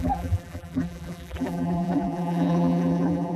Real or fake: fake